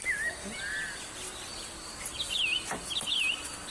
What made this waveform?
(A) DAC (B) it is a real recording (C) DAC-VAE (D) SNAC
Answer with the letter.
B